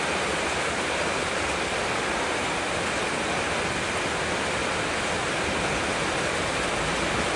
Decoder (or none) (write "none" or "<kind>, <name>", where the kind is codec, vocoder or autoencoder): none